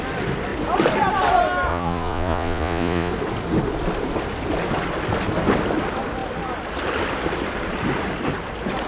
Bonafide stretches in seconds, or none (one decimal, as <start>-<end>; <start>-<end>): 0.0-1.7; 3.1-8.9